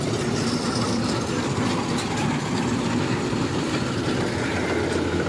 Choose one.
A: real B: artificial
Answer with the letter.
A